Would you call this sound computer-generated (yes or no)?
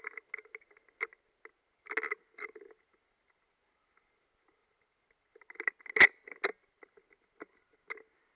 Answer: no